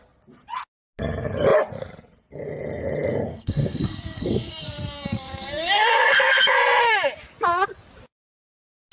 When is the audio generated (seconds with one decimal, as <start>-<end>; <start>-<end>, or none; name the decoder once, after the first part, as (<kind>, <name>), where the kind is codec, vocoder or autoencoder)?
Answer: 3.3-6.8 (codec, SNAC)